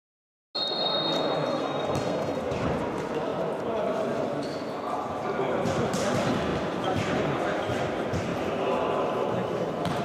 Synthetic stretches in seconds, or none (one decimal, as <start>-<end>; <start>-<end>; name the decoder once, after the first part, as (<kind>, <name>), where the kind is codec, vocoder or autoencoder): 1.5-2.4 (codec, SNAC)